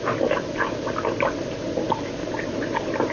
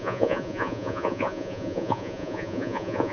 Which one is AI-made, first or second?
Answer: second